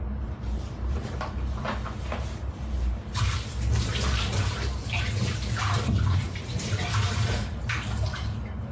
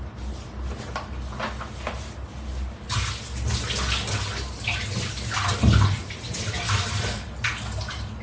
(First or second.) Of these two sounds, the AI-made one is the first